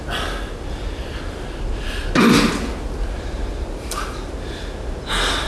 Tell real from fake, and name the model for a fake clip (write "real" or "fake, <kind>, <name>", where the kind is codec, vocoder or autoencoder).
real